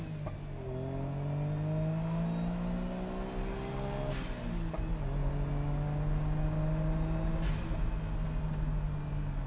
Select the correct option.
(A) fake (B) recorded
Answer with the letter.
B